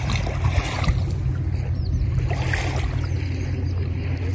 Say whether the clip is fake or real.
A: real